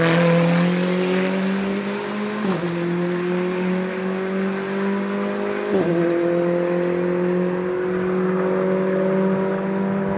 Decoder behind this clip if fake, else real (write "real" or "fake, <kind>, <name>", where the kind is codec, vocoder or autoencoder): real